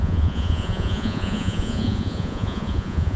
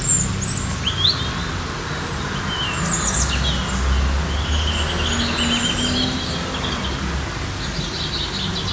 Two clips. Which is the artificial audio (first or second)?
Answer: first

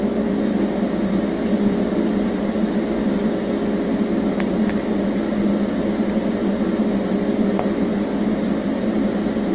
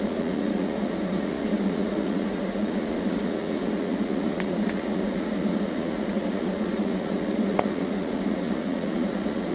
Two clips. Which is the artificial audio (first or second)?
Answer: second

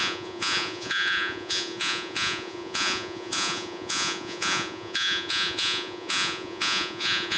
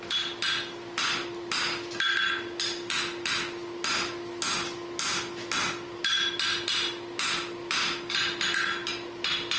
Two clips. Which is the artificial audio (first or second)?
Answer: first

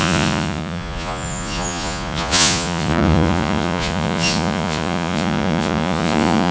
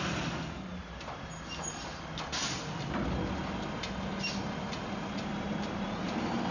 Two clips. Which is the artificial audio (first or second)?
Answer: first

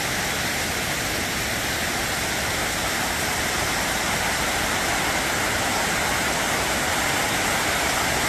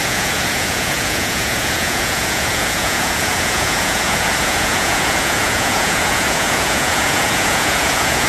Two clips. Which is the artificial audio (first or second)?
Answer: second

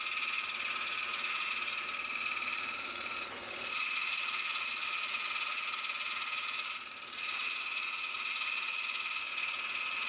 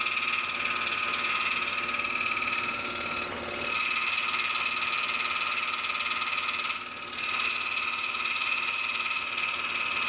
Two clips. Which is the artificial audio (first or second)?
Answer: first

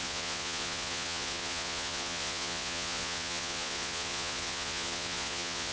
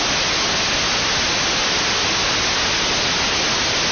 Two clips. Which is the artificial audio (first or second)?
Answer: first